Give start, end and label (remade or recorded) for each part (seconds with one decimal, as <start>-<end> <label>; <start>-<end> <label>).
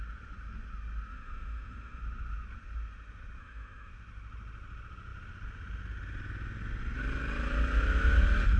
0.0-1.1 recorded; 1.1-2.0 remade; 2.0-3.4 recorded; 3.4-3.9 remade; 3.9-8.6 recorded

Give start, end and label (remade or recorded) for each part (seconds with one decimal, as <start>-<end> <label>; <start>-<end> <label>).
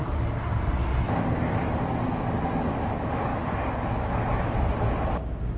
0.0-5.6 recorded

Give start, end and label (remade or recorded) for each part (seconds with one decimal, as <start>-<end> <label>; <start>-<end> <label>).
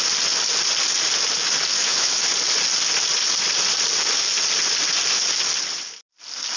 0.0-1.8 recorded; 1.8-2.3 remade; 2.3-6.6 recorded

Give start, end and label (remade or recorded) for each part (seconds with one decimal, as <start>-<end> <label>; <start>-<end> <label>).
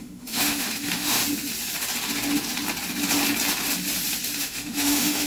0.0-1.2 remade; 1.2-4.4 recorded; 4.4-5.3 remade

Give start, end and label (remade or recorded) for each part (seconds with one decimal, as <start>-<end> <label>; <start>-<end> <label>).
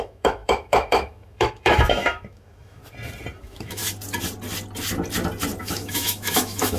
0.0-2.8 remade; 2.8-3.4 recorded; 3.4-3.8 remade; 3.8-5.6 recorded; 5.6-6.8 remade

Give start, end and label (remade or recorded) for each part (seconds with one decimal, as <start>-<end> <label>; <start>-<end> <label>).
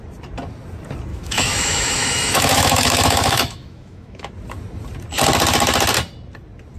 0.0-1.1 recorded; 1.1-4.3 remade; 4.3-6.8 recorded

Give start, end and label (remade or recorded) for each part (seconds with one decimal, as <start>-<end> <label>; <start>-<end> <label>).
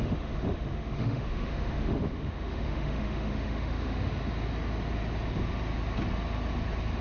0.0-4.1 remade; 4.1-7.0 recorded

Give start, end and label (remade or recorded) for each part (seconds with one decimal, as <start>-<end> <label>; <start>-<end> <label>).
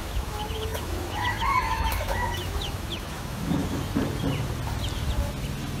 0.0-3.6 remade; 3.6-5.8 recorded